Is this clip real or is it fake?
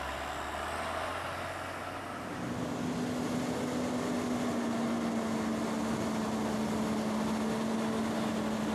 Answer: real